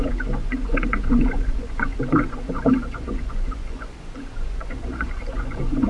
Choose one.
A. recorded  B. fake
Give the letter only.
B